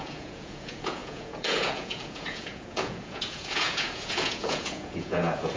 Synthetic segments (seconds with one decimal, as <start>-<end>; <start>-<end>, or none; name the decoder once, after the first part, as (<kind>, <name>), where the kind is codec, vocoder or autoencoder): 0.0-5.6 (vocoder, Vocos)